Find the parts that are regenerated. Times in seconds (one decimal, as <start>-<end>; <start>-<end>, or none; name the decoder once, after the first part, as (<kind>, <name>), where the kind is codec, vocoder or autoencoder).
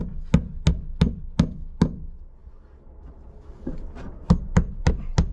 none